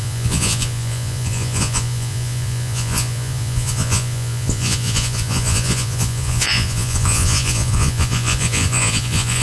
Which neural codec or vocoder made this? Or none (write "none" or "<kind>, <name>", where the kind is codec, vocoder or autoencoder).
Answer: vocoder, Vocos